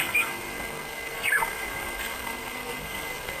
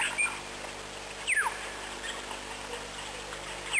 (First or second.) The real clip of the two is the second